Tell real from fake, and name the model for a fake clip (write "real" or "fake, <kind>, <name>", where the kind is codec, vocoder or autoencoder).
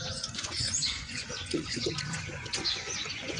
fake, vocoder, Vocos